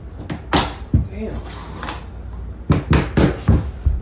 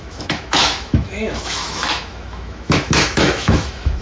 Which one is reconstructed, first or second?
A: second